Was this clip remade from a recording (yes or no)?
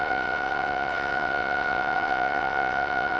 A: yes